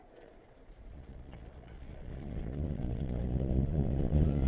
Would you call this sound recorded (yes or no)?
no